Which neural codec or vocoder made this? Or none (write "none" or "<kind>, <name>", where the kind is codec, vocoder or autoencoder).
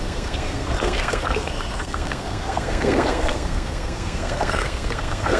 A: codec, SNAC